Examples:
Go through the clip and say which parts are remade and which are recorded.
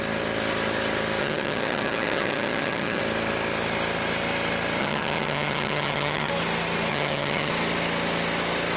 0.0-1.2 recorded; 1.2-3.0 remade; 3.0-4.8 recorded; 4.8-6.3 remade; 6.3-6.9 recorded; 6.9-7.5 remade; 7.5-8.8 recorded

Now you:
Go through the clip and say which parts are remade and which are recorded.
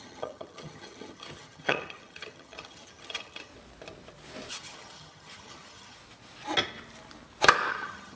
0.0-3.5 remade; 3.5-4.5 recorded; 4.5-6.0 remade; 6.0-7.7 recorded; 7.7-8.2 remade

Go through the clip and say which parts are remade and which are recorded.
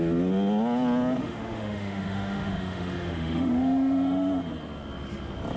0.0-1.2 recorded; 1.2-4.5 remade; 4.5-5.6 recorded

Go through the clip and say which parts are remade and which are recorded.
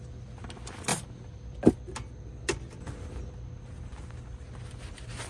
0.0-5.3 recorded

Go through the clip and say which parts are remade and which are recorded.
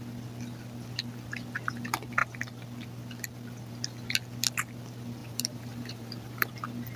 0.0-5.2 recorded; 5.2-6.5 remade; 6.5-7.0 recorded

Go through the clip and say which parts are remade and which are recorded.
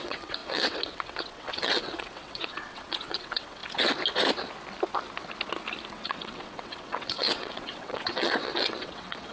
0.0-3.6 remade; 3.6-5.9 recorded; 5.9-9.3 remade